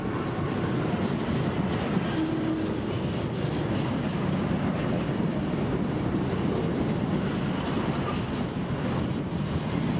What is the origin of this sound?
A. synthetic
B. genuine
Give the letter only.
B